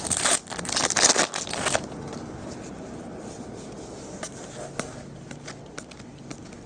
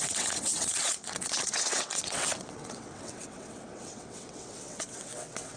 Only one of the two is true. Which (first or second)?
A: first